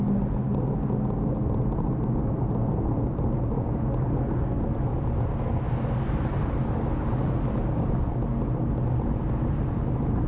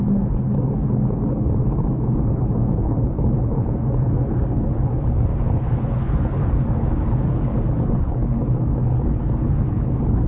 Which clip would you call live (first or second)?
first